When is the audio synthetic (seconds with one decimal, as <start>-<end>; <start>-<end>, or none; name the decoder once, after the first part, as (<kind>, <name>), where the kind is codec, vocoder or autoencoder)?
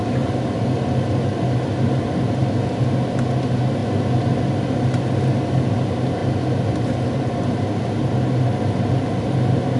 none